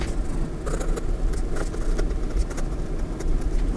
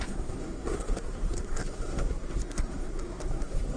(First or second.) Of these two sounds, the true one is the first